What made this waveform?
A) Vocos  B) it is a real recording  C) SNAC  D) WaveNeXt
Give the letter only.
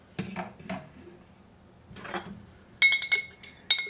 B